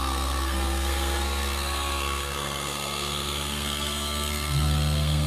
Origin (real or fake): fake